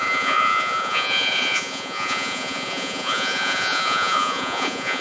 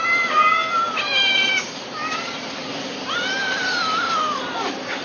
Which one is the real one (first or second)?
second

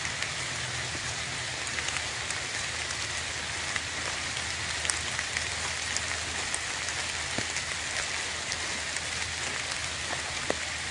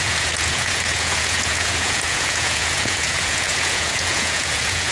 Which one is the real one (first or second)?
first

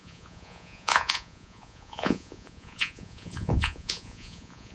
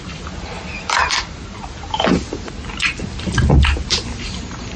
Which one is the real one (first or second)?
second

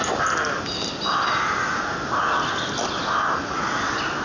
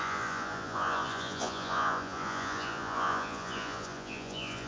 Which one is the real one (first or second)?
first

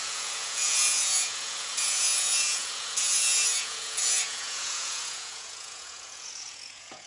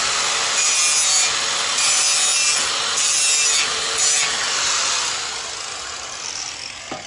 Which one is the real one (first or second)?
second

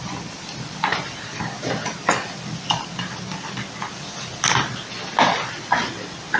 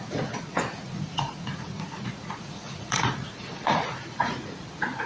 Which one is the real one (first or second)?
first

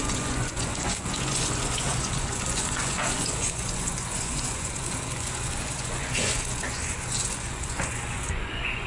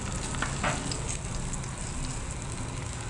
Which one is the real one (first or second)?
second